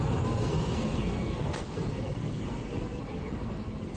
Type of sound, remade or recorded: remade